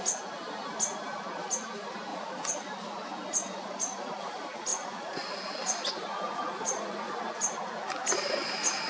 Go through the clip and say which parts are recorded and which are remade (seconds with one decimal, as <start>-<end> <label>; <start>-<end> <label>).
0.0-2.1 recorded; 2.1-2.7 remade; 2.7-4.7 recorded; 4.7-5.3 remade; 5.3-6.0 recorded; 6.0-7.2 remade; 7.2-8.9 recorded